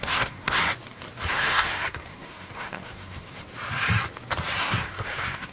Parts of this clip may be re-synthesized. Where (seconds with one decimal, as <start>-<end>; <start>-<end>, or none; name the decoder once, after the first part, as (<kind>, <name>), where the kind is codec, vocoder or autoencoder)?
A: 0.0-0.6 (codec, SNAC); 1.3-3.4; 4.6-5.5